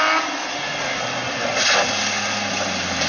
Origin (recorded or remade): recorded